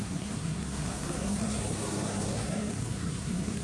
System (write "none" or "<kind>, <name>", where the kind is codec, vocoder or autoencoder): codec, SNAC